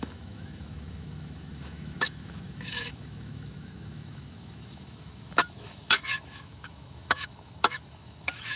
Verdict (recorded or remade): remade